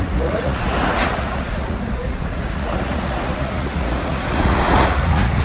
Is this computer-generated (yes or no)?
yes